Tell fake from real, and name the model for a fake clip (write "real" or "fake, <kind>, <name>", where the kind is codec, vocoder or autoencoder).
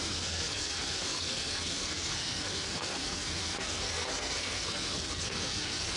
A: fake, codec, SNAC